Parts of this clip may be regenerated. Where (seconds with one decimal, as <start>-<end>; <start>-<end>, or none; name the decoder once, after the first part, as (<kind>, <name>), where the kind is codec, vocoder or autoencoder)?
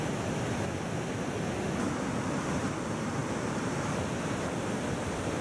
none